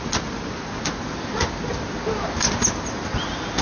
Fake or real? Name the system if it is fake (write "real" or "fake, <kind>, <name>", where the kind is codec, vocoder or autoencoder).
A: real